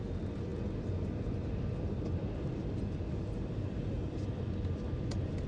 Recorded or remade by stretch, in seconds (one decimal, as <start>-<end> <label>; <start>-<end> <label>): 0.0-5.5 recorded